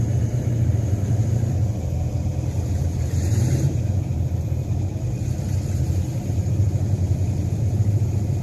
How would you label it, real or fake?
fake